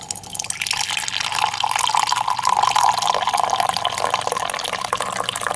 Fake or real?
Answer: real